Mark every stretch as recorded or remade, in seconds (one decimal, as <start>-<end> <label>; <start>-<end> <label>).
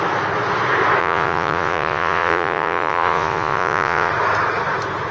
0.0-1.0 recorded; 1.0-4.1 remade; 4.1-5.1 recorded